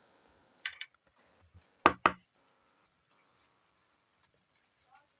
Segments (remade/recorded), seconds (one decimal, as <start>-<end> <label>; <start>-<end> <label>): 0.0-0.4 recorded; 0.4-0.9 remade; 0.9-5.2 recorded